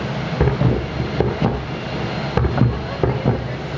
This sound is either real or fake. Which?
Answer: real